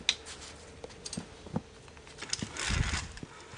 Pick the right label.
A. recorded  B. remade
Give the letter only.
A